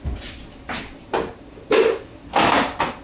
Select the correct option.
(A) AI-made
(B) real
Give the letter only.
B